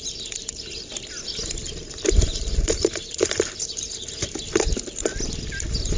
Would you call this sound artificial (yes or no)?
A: no